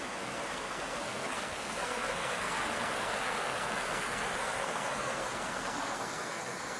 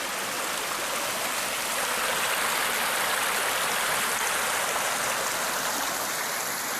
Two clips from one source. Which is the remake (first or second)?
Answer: first